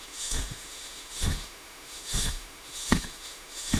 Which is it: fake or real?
fake